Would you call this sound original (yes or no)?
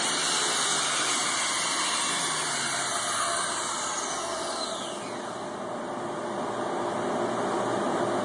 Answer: yes